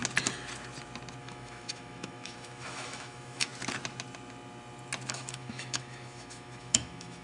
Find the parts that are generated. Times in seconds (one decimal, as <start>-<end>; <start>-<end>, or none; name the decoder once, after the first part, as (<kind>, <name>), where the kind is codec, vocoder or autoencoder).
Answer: 1.2-3.5 (autoencoder, DAC-VAE); 5.1-7.2